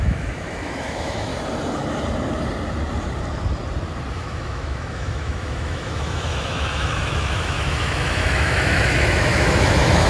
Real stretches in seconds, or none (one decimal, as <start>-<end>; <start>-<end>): 1.3-4.1

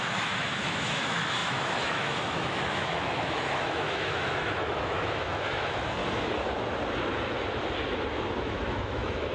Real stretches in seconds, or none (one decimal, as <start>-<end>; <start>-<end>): 6.0-8.4

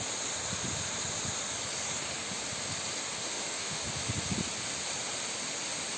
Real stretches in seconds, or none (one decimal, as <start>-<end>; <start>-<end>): 0.0-3.2; 3.8-6.0

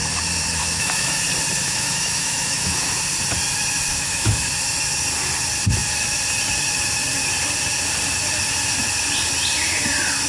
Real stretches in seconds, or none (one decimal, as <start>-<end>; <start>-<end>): 0.0-0.6; 1.2-1.6; 2.9-3.9; 4.5-10.3